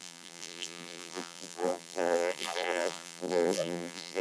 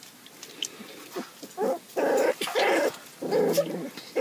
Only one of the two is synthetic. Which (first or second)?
first